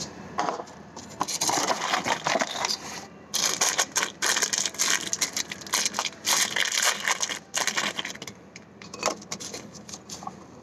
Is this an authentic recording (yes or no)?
yes